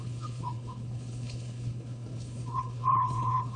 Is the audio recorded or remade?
remade